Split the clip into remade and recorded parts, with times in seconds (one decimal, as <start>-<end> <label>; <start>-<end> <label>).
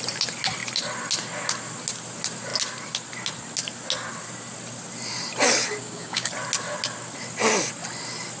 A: 0.0-5.8 recorded; 5.8-6.3 remade; 6.3-8.4 recorded